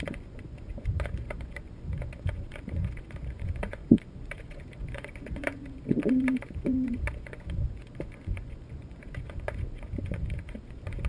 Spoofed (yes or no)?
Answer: yes